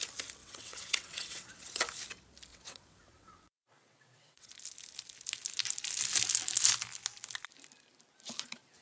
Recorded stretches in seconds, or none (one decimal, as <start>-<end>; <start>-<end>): 0.0-0.4; 1.8-2.5; 4.5-8.8